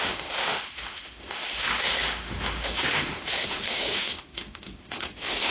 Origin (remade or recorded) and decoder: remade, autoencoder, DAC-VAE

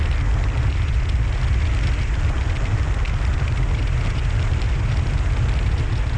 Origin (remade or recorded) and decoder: recorded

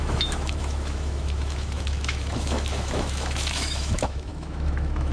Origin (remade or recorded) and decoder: remade, autoencoder, DAC-VAE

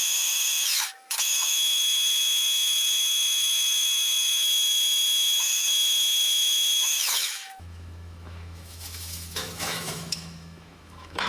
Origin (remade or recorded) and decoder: remade, autoencoder, DAC-VAE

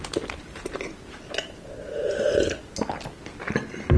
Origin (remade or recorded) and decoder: recorded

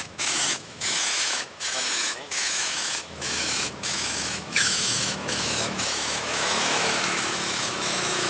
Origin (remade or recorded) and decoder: remade, autoencoder, DAC-VAE